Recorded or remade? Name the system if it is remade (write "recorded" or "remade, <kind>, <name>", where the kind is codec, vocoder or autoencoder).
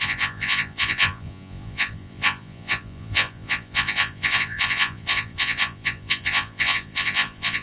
remade, vocoder, Vocos